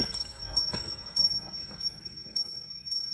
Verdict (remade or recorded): remade